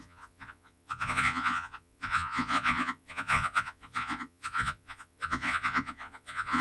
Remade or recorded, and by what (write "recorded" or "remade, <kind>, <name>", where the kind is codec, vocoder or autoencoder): remade, vocoder, Vocos